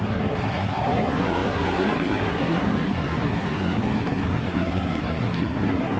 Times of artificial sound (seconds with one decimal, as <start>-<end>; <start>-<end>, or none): 0.0-6.0